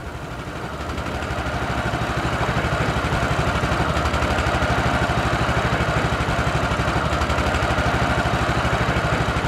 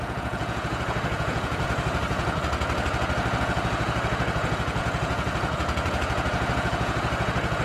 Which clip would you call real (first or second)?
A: first